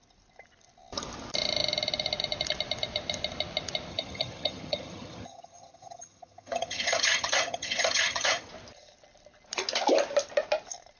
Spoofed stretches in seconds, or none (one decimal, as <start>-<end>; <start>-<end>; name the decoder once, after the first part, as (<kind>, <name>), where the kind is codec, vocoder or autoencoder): 3.9-8.5 (vocoder, HiFi-GAN)